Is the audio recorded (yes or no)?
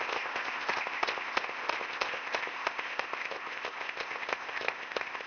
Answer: no